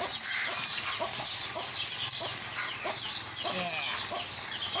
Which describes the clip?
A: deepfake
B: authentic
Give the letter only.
B